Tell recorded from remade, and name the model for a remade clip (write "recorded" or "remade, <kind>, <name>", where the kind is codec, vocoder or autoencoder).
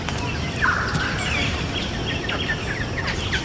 recorded